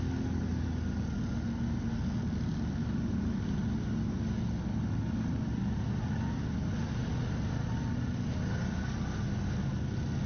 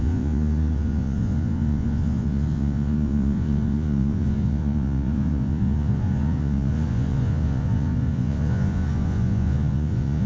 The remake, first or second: second